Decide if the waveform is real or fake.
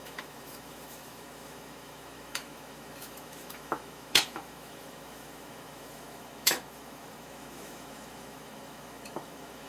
fake